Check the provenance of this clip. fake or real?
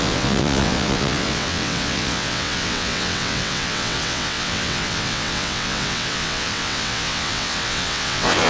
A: fake